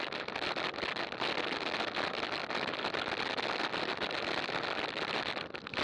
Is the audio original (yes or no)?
yes